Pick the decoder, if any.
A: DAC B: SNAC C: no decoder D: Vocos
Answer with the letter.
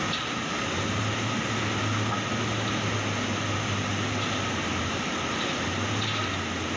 C